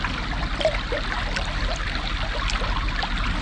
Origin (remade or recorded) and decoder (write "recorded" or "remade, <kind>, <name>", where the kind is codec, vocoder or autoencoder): recorded